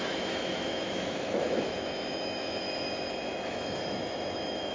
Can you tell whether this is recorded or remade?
remade